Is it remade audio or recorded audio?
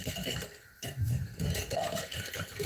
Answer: remade